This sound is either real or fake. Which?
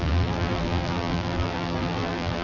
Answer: fake